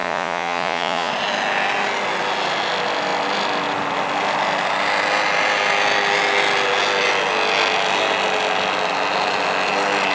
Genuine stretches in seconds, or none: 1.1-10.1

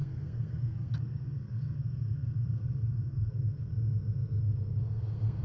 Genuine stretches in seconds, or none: 3.7-4.4

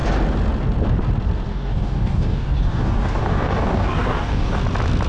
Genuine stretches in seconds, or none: 0.0-1.5; 4.6-5.1

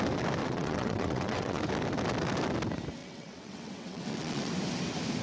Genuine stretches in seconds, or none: 0.0-0.4; 1.6-3.0; 4.5-5.2